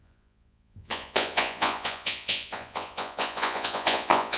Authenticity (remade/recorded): remade